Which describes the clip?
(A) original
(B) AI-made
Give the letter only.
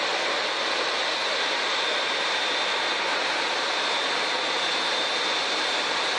A